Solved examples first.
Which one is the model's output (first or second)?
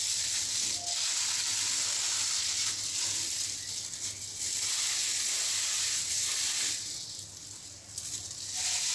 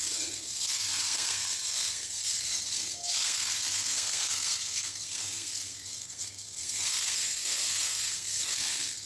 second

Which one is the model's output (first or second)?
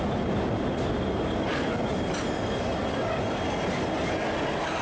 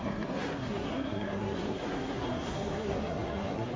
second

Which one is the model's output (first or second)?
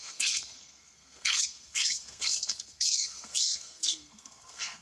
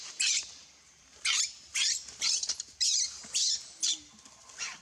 first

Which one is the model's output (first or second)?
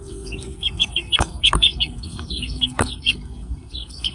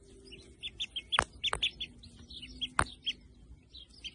first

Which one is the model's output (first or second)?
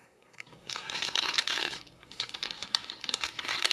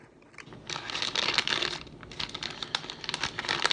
first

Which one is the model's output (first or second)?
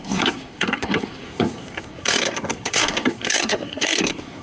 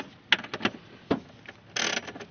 first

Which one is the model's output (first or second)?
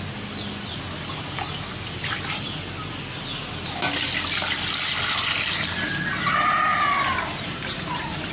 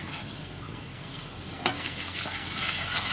second